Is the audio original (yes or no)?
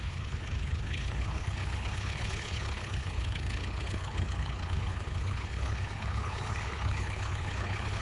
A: no